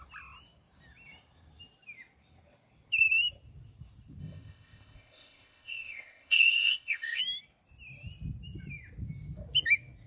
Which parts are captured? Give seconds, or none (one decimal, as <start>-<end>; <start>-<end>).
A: 0.0-4.2; 7.2-10.1